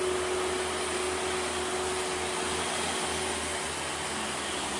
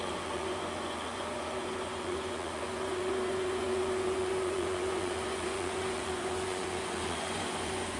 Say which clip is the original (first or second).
first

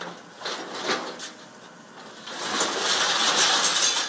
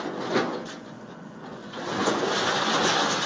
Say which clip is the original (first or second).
first